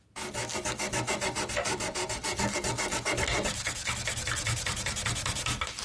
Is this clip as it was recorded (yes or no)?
yes